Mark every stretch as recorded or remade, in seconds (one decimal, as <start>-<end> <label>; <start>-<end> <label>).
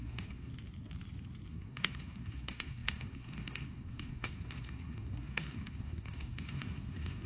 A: 0.0-0.5 remade; 0.5-1.5 recorded; 1.5-7.3 remade